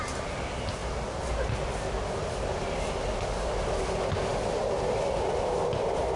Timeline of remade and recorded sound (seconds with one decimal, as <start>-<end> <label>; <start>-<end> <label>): 0.0-6.2 recorded

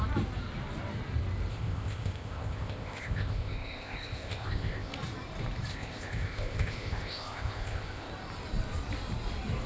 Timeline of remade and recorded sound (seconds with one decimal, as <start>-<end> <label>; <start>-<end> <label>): 0.0-1.5 recorded; 1.5-4.9 remade; 4.9-5.7 recorded; 5.7-8.1 remade; 8.1-9.7 recorded

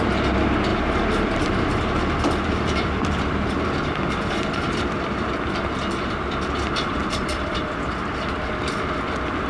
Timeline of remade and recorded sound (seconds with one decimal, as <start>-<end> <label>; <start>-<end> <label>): 0.0-0.7 recorded; 0.7-5.5 remade; 5.5-7.0 recorded; 7.0-7.8 remade; 7.8-9.5 recorded

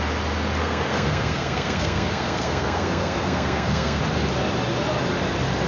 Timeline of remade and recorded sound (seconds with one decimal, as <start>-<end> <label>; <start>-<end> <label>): 0.0-0.6 recorded; 0.6-4.0 remade; 4.0-5.7 recorded

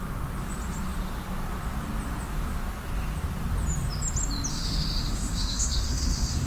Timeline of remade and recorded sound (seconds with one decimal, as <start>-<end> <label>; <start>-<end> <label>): 0.0-4.5 recorded; 4.5-6.5 remade